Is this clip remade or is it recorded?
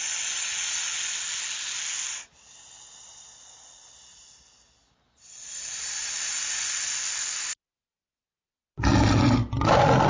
recorded